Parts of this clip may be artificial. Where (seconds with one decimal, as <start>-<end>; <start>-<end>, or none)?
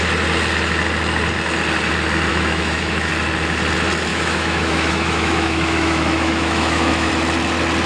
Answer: 2.3-3.1; 4.1-7.1